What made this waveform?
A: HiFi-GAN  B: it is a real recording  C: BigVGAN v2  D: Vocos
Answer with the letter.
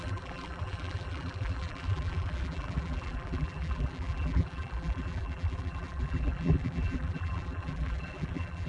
C